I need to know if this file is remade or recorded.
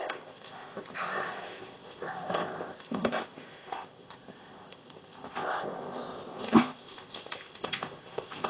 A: remade